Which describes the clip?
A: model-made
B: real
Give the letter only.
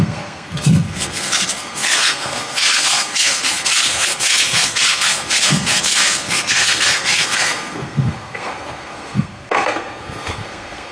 A